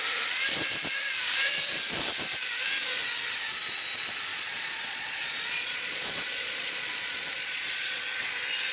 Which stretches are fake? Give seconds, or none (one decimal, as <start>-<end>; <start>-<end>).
4.3-8.0